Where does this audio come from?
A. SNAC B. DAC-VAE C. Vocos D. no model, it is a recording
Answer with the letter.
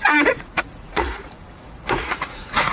C